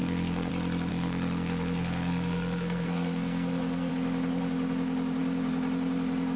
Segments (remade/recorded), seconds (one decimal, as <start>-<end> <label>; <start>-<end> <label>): 0.0-0.5 remade; 0.5-0.9 recorded; 0.9-3.9 remade; 3.9-6.4 recorded